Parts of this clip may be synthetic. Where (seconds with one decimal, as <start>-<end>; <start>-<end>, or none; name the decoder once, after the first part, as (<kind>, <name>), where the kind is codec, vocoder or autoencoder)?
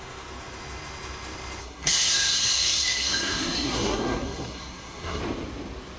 1.6-5.2 (codec, SNAC)